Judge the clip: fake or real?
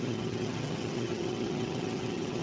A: fake